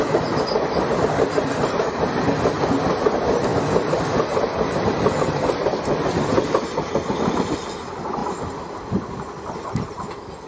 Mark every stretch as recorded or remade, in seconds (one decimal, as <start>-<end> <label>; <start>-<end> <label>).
0.0-10.5 recorded

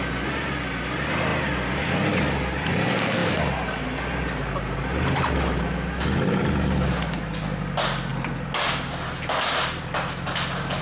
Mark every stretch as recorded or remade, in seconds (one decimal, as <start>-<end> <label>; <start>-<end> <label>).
0.0-10.8 recorded